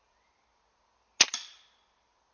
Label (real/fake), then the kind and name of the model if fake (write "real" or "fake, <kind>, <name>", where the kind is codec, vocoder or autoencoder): real